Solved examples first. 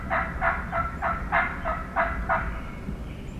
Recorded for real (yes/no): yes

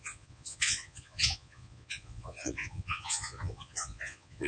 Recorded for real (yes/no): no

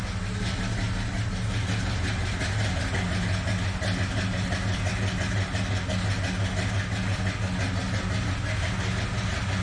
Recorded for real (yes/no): yes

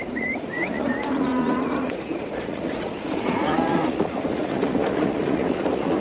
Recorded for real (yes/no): no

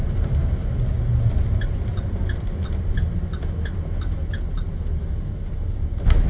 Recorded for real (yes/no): yes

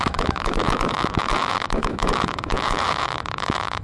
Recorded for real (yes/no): no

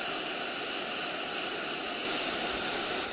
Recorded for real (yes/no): yes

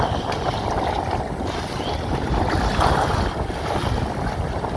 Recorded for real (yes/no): yes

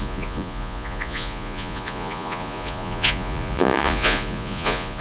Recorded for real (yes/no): no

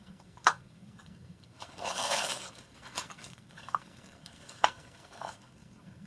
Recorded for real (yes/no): no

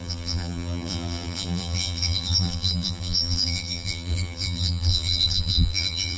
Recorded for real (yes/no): no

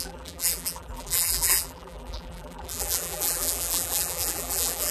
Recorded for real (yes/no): no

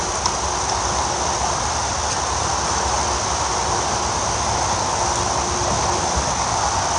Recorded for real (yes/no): yes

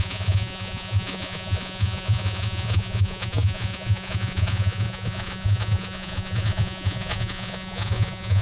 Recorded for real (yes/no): no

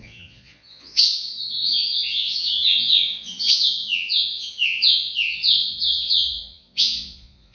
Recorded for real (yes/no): no